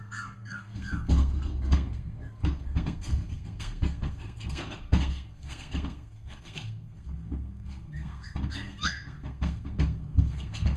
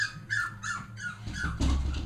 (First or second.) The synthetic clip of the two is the first